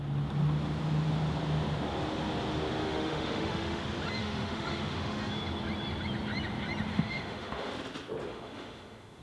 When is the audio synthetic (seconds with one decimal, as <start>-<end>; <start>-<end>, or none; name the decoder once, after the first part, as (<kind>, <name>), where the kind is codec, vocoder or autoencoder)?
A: 2.8-3.8 (autoencoder, DAC-VAE); 4.2-5.3; 6.9-7.7; 8.3-9.2